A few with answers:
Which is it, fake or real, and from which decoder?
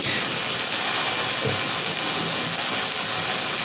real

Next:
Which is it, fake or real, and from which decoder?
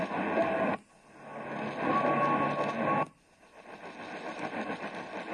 real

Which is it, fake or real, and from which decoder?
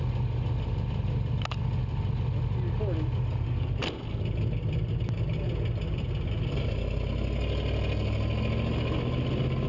real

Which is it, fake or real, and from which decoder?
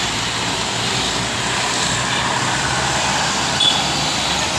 real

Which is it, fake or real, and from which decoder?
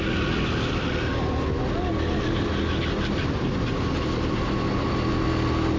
real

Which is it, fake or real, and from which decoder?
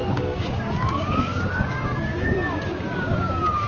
fake, codec, DAC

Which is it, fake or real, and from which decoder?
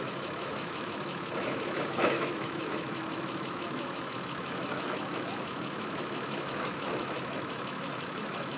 fake, autoencoder, DAC-VAE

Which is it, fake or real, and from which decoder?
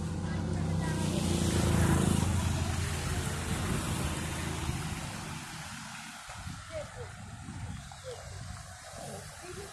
real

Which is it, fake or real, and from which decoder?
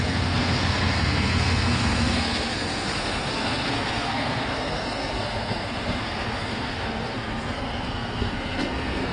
fake, codec, SNAC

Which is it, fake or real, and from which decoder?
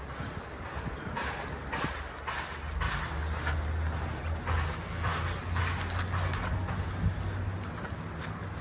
real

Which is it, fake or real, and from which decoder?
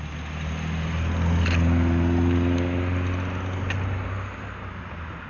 real